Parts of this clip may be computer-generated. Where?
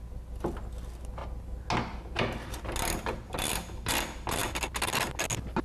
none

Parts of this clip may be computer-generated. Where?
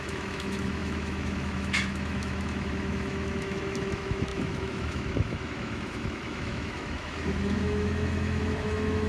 0.0-9.1 (autoencoder, DAC-VAE)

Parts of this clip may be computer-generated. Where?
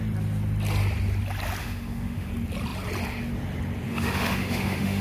1.6-2.3 (autoencoder, DAC-VAE); 3.9-5.0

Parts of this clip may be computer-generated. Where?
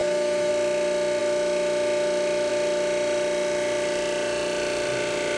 0.0-0.5 (autoencoder, DAC-VAE)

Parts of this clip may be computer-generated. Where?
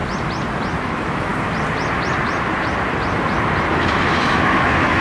0.8-1.3 (autoencoder, DAC-VAE); 3.7-5.0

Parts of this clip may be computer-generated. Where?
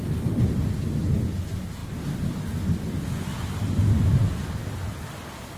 none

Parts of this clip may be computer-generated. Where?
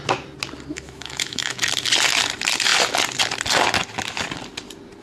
0.7-1.6 (autoencoder, DAC-VAE)